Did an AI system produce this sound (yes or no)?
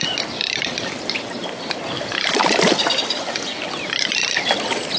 no